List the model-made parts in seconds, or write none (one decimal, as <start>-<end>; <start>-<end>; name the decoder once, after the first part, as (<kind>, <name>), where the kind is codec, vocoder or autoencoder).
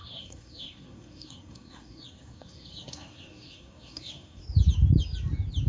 0.0-4.4 (codec, SNAC)